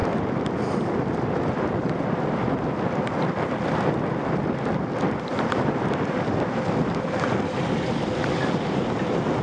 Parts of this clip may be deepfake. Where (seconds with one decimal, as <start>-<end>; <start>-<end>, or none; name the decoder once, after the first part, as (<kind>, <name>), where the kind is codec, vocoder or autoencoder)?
none